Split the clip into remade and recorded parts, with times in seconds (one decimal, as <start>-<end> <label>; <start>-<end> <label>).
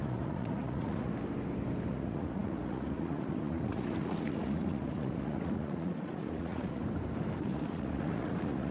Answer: 0.0-1.1 remade; 1.1-1.9 recorded; 1.9-6.8 remade; 6.8-7.4 recorded; 7.4-8.7 remade